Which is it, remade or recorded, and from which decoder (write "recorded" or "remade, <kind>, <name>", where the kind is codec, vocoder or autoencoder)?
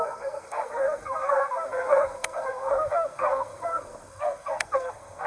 remade, codec, SNAC